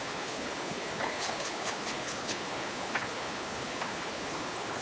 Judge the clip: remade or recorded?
remade